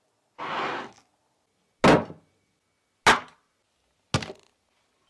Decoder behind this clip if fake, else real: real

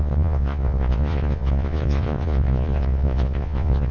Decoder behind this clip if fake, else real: fake, vocoder, Vocos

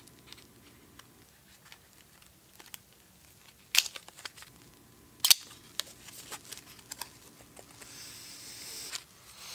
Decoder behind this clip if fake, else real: real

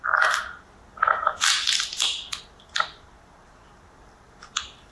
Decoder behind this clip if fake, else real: real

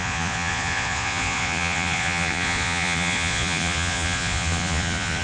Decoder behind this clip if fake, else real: fake, vocoder, Vocos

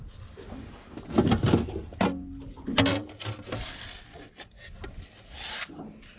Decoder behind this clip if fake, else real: real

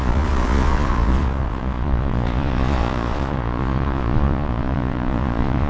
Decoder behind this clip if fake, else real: fake, vocoder, Vocos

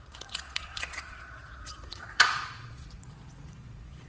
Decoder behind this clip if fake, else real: fake, vocoder, Vocos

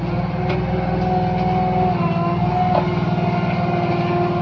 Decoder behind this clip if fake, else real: real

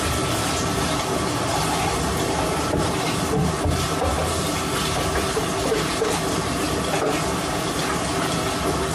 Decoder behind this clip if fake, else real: real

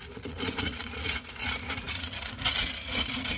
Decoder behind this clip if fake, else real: fake, vocoder, Vocos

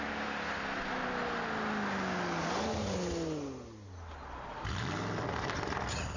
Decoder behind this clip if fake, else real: real